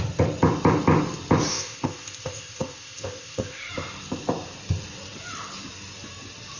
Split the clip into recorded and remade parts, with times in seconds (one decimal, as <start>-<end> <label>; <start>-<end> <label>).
0.0-1.5 recorded; 1.5-3.7 remade; 3.7-6.6 recorded